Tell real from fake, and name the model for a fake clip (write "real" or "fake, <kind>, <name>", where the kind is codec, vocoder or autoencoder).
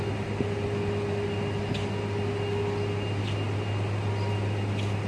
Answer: real